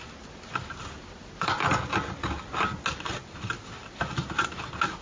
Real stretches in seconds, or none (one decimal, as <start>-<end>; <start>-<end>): 0.0-5.0